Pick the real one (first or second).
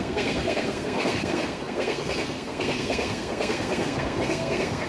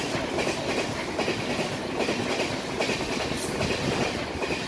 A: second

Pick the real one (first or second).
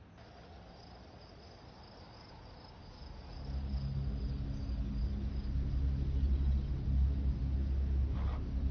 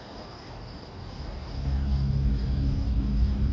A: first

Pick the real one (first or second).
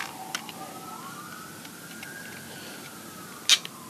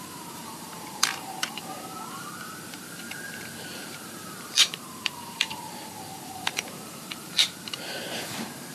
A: first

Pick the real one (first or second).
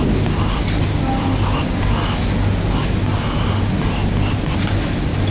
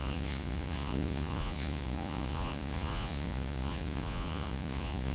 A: first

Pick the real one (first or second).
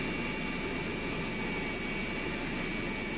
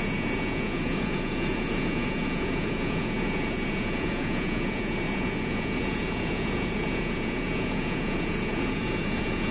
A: first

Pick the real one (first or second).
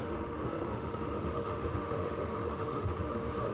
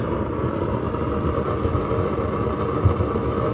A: second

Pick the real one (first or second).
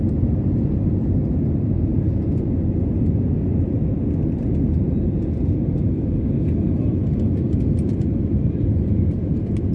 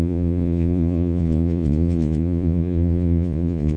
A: first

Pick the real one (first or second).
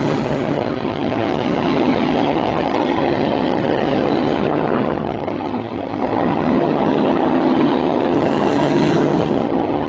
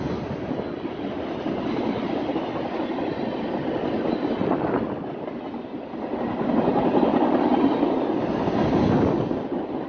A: second